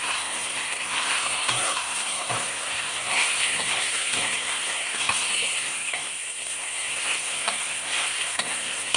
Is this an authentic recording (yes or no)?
no